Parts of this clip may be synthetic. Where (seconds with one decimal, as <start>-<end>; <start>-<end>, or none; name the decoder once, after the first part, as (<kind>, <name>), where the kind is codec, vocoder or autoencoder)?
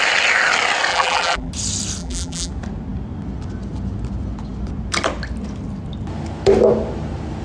0.9-1.5 (vocoder, BigVGAN v2); 2.0-2.5